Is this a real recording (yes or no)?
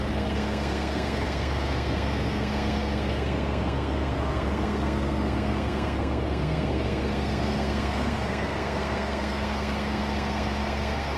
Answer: no